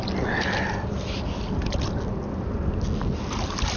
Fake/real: real